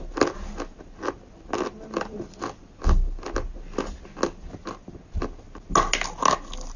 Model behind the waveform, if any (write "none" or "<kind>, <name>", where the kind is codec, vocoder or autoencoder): none